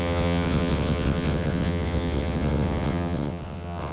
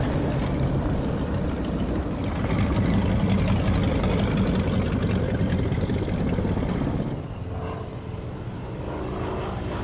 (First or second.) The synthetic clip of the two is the first